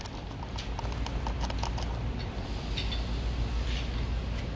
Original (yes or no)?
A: yes